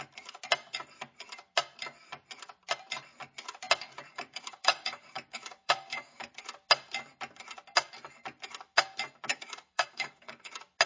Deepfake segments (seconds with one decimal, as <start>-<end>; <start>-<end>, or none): 4.1-6.3; 9.3-10.5